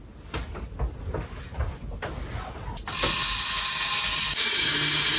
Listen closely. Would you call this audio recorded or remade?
recorded